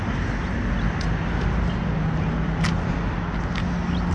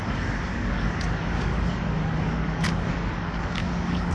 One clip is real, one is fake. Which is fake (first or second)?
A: second